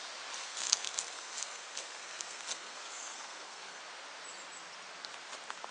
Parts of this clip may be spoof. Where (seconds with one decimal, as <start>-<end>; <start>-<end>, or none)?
0.4-3.8